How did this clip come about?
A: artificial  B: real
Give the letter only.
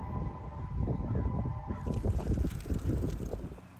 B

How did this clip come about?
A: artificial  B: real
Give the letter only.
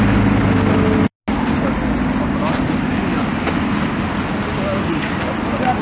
B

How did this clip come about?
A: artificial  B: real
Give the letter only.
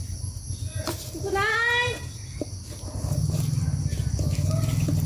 B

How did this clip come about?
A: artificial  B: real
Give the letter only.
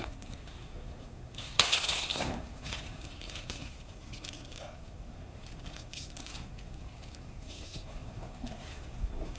A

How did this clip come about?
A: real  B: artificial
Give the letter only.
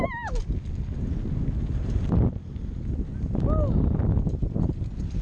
A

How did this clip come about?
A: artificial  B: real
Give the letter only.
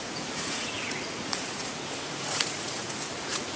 A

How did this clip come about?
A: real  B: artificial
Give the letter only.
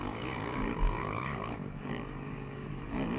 B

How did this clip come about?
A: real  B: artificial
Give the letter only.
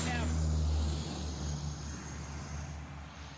A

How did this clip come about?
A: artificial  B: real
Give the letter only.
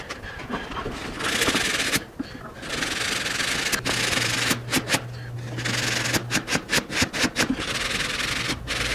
B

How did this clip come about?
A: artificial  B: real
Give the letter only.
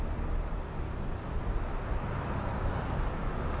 B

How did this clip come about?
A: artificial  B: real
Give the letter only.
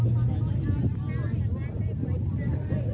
B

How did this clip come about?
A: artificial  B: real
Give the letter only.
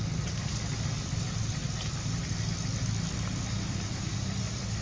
B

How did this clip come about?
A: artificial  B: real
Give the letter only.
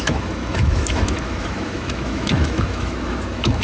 A